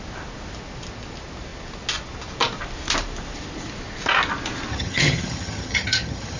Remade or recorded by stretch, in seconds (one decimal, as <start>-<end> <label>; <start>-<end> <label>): 0.0-4.7 recorded; 4.7-6.4 remade